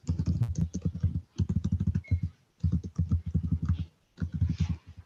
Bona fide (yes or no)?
yes